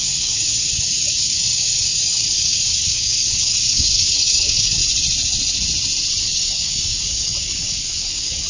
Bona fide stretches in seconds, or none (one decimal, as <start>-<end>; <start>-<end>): 4.8-6.2